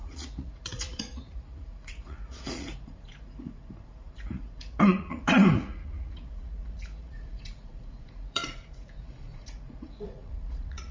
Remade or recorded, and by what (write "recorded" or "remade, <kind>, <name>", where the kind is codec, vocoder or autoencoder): remade, vocoder, Vocos